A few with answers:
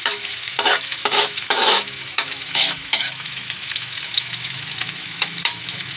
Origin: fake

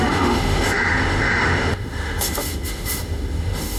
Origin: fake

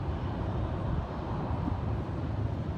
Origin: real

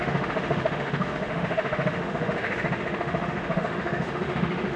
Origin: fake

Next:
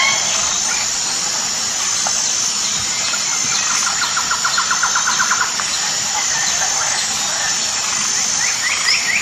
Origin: real